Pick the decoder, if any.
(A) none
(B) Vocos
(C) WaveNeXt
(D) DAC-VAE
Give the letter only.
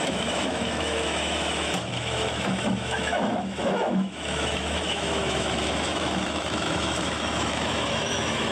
D